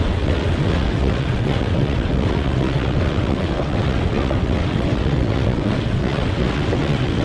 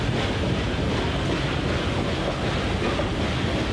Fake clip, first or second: first